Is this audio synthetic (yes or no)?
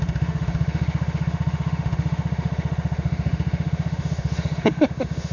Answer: yes